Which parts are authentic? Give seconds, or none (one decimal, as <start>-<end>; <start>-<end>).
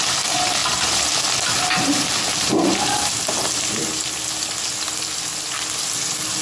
0.0-6.4